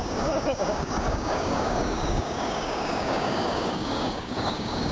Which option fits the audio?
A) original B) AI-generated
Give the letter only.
B